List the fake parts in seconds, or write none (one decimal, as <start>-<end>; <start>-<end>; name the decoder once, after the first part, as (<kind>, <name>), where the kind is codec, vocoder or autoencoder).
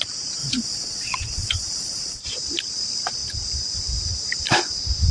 0.4-2.2 (vocoder, WaveNeXt)